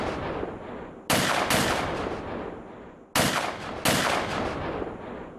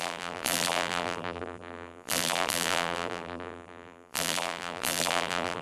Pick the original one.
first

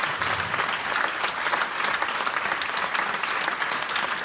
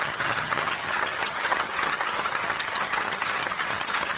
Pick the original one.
first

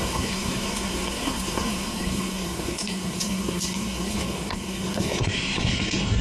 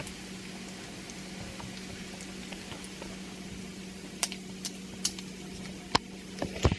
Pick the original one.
second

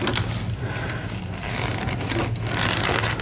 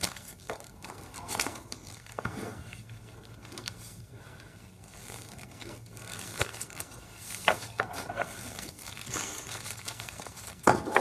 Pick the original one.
first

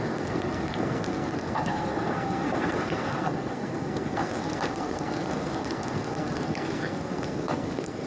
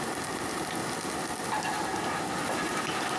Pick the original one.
second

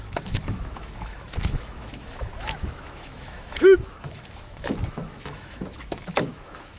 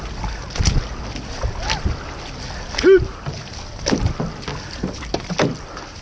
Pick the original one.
second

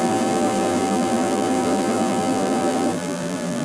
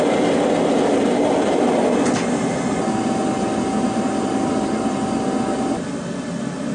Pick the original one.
second